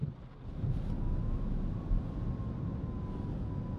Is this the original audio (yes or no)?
yes